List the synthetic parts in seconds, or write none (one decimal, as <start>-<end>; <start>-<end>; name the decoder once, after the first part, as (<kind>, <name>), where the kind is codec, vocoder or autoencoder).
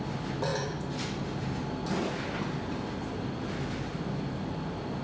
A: none